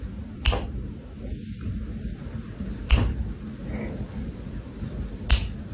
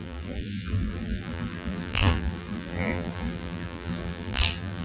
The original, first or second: first